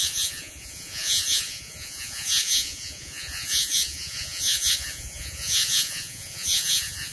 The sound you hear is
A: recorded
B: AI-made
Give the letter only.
B